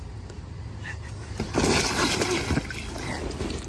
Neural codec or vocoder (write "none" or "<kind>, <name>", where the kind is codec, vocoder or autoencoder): none